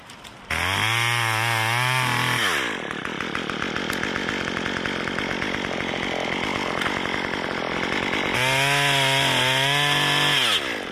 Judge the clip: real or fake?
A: real